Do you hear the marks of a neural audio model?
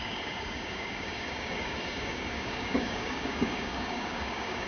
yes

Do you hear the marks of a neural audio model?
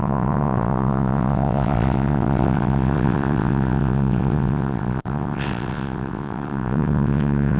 yes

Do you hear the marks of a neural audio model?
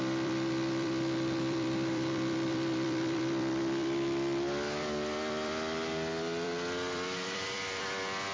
yes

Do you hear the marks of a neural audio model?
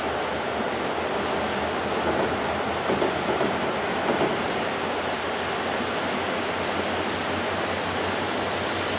no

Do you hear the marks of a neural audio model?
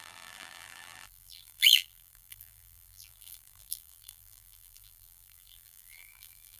yes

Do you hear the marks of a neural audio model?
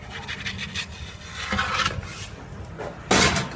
no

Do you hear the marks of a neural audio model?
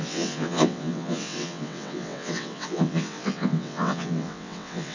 yes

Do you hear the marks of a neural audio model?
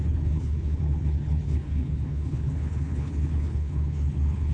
yes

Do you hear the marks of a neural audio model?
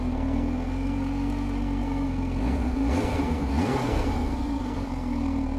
yes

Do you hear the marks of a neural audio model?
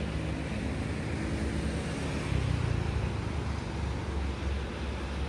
no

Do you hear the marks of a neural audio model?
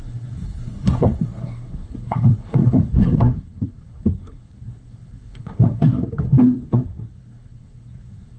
yes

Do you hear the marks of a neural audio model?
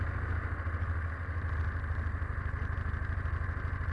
no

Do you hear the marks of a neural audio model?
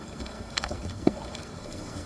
yes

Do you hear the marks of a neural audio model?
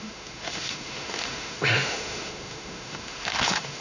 yes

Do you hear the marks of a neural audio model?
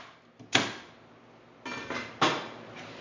no